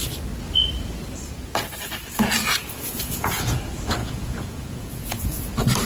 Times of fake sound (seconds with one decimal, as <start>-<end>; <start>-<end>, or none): 2.6-3.6; 4.0-5.3